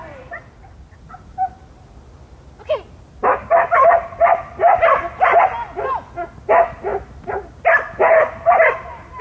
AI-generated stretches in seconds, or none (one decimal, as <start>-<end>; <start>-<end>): none